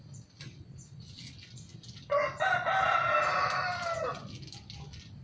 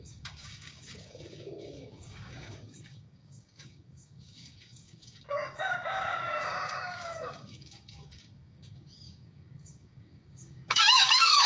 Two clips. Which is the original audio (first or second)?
first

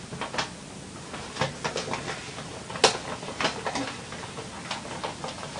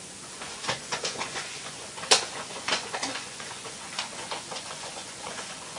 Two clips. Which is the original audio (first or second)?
first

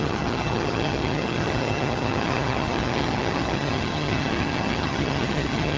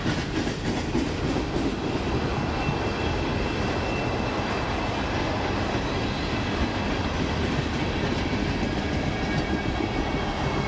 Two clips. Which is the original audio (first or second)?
second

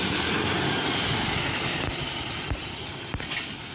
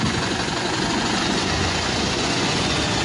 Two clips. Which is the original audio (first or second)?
first